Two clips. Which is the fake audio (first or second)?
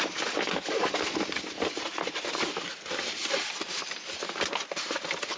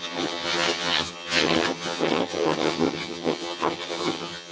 second